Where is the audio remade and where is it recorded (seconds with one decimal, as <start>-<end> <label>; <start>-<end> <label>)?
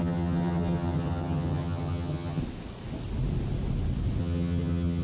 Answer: 0.0-2.4 remade; 2.4-4.2 recorded; 4.2-5.0 remade